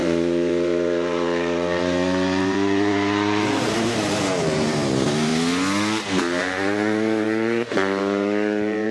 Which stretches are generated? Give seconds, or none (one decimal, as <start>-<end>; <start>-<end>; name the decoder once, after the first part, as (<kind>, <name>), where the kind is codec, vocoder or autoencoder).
0.0-5.3 (vocoder, BigVGAN v2); 6.4-8.9